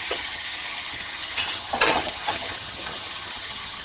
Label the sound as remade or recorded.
remade